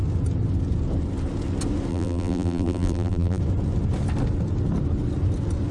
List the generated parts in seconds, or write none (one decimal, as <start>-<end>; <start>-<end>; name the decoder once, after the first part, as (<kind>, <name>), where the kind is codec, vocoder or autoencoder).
1.9-3.4 (vocoder, BigVGAN v2)